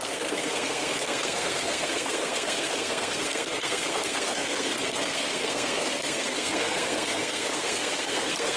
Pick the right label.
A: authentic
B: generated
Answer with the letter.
B